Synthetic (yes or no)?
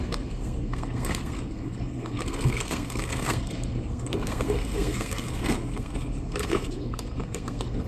yes